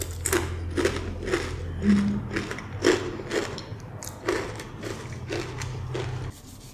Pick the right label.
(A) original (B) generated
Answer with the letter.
A